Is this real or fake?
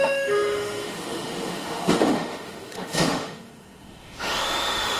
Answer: fake